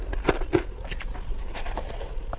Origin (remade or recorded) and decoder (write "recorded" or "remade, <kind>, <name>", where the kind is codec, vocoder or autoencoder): recorded